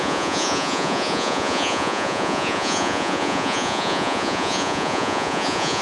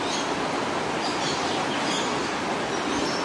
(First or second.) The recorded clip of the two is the second